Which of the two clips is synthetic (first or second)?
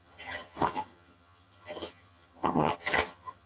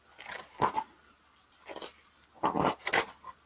first